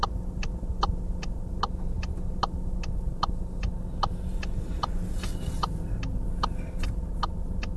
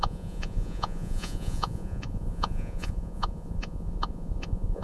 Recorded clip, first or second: first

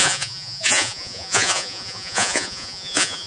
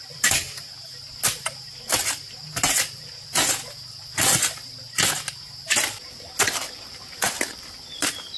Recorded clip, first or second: second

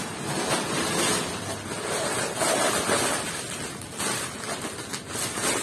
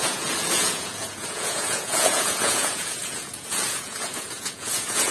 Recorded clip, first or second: first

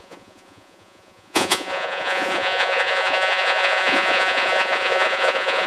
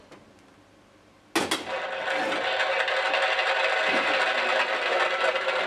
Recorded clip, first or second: second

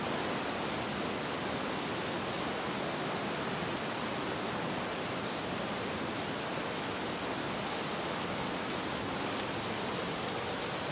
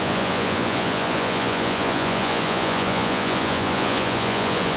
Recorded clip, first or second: first